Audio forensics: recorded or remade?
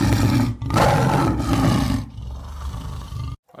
recorded